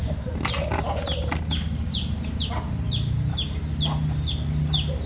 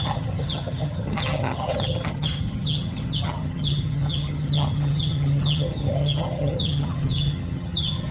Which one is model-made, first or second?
second